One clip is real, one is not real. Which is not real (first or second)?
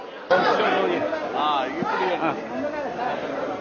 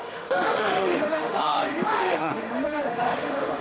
second